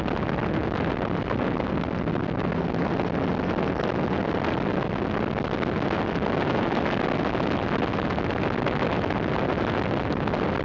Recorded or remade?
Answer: recorded